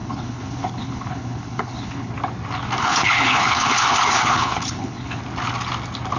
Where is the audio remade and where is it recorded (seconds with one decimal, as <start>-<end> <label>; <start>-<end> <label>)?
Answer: 0.0-2.1 remade; 2.1-2.8 recorded; 2.8-5.2 remade; 5.2-6.2 recorded